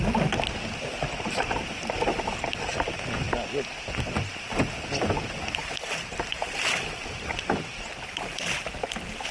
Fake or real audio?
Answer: real